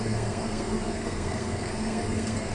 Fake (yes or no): yes